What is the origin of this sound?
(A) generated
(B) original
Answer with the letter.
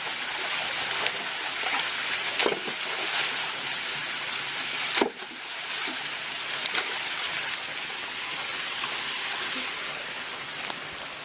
B